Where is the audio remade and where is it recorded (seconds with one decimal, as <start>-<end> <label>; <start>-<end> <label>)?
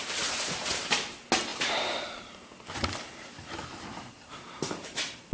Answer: 0.0-5.3 recorded